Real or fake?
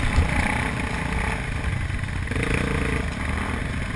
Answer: real